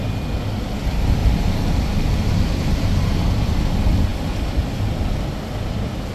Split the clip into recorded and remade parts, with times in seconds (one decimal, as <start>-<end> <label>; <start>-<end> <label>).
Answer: 0.0-1.2 recorded; 1.2-3.1 remade; 3.1-6.1 recorded